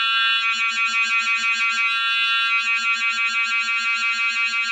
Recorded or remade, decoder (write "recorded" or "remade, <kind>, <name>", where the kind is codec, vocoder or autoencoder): recorded